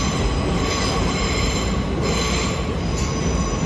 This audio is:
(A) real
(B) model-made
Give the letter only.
A